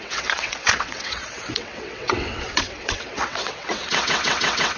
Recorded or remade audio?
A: remade